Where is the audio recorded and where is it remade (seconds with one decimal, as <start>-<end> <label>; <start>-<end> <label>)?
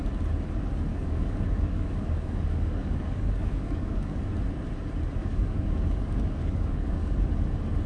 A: 0.0-0.9 recorded; 0.9-4.2 remade; 4.2-5.2 recorded; 5.2-7.3 remade; 7.3-7.9 recorded